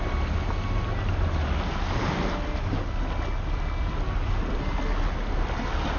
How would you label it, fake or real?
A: real